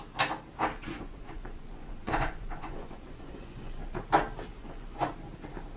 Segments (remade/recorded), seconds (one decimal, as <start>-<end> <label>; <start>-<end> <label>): 0.0-0.8 recorded; 0.8-4.0 remade; 4.0-4.6 recorded; 4.6-5.1 remade; 5.1-5.8 recorded